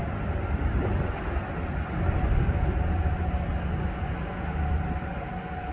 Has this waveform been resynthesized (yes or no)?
no